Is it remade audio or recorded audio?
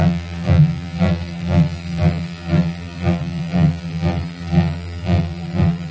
remade